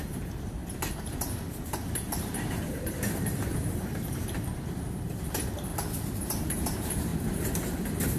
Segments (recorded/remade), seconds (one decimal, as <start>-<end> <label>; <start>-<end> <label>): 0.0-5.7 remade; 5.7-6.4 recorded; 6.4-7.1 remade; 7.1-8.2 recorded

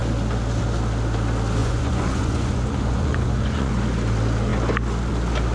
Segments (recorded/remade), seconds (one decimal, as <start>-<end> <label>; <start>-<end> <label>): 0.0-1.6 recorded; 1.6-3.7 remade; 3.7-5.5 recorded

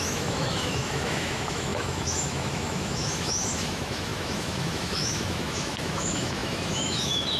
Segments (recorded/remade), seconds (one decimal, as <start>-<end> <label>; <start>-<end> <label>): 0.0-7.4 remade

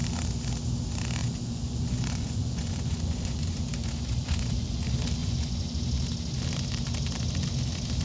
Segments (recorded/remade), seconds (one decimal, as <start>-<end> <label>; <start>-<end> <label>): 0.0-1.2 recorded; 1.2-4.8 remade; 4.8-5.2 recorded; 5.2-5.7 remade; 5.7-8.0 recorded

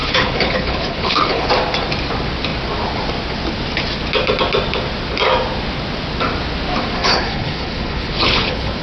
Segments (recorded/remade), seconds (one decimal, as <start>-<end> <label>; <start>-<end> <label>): 0.0-1.5 remade; 1.5-7.0 recorded; 7.0-8.8 remade